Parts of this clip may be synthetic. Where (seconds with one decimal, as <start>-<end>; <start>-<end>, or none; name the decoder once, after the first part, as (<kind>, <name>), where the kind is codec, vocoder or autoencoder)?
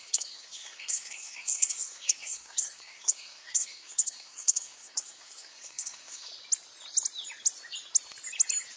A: 0.0-6.3 (codec, SNAC)